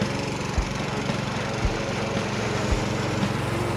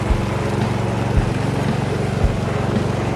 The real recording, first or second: second